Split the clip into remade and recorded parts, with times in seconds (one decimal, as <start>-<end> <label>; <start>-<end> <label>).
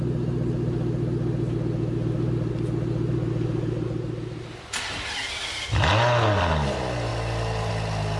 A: 0.0-8.2 recorded